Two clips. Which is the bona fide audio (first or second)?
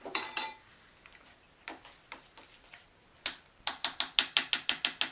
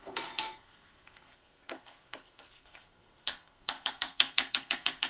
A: first